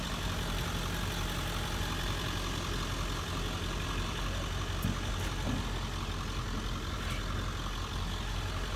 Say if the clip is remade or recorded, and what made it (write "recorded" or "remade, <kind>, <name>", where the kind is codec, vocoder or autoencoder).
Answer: recorded